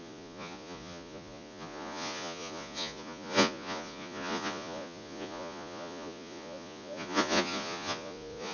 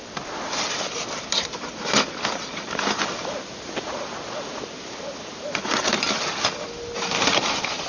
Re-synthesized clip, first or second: first